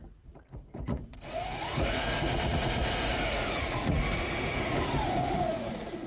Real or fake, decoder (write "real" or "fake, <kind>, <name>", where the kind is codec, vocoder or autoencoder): fake, vocoder, Vocos